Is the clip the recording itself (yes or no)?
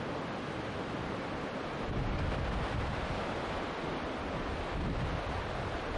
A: yes